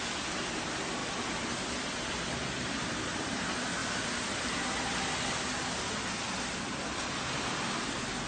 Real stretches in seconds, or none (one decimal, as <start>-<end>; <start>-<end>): 0.0-1.0; 2.9-3.8; 4.9-8.3